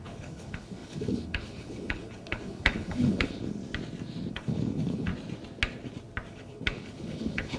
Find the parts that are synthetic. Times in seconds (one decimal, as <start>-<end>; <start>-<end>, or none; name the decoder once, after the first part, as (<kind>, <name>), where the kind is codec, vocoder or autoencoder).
0.0-3.6 (codec, HILCodec); 4.3-5.1; 6.3-7.6